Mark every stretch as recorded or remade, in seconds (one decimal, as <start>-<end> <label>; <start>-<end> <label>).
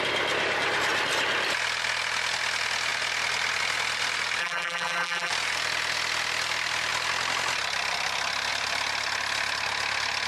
0.0-4.4 recorded; 4.4-5.3 remade; 5.3-10.3 recorded